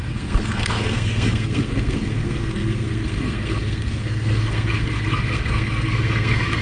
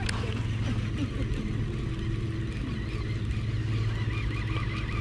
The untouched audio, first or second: second